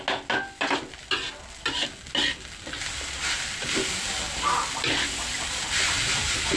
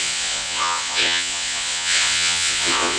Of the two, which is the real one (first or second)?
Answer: first